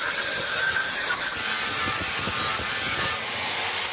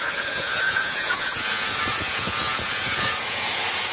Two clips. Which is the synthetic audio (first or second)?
second